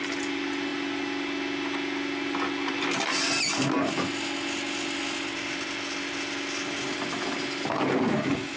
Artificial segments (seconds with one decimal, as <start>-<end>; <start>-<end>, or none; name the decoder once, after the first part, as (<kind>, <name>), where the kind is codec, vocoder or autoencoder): none